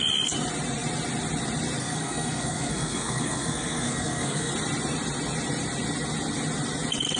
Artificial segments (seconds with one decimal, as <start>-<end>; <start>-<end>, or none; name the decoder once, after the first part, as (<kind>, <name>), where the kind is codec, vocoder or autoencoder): 1.8-4.5 (codec, SNAC)